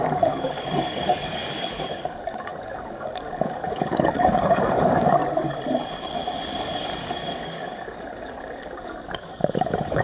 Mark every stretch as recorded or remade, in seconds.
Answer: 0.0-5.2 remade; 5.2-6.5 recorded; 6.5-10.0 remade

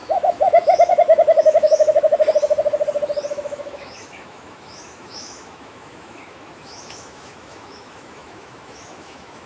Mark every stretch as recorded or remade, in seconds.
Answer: 0.0-2.1 remade; 2.1-3.3 recorded; 3.3-9.5 remade

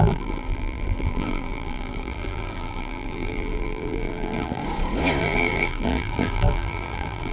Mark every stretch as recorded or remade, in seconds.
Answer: 0.0-4.6 remade; 4.6-5.2 recorded; 5.2-7.3 remade

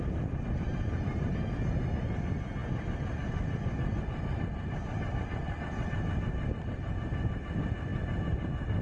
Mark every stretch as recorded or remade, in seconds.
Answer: 0.0-8.8 recorded

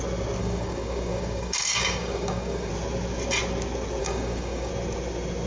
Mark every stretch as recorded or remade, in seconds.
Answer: 0.0-0.4 recorded; 0.4-2.7 remade; 2.7-4.0 recorded; 4.0-4.7 remade; 4.7-5.5 recorded

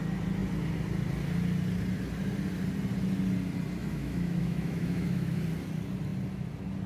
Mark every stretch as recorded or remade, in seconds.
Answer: 0.0-3.8 recorded; 3.8-5.4 remade; 5.4-6.9 recorded

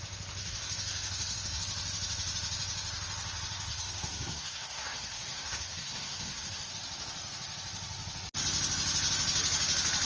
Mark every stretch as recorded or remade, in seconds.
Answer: 0.0-0.4 recorded; 0.4-1.6 remade; 1.6-3.7 recorded; 3.7-6.7 remade; 6.7-10.0 recorded